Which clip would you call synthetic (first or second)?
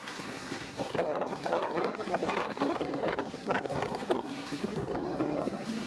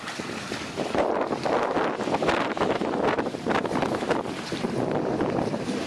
first